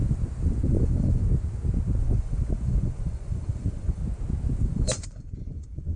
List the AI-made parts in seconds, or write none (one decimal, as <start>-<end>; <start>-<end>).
0.7-1.2; 2.0-4.0; 4.6-6.0